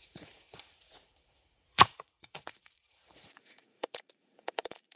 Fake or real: fake